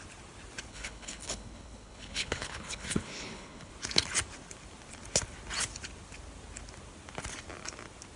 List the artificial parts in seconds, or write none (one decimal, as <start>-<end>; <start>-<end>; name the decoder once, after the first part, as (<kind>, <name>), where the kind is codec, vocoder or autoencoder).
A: 0.7-3.7 (codec, HILCodec)